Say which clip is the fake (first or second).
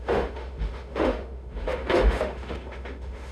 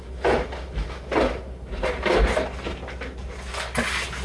first